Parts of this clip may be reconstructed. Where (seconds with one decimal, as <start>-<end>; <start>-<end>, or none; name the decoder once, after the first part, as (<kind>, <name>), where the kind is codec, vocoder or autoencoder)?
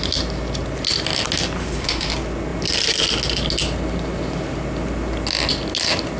1.6-2.1 (autoencoder, DAC-VAE)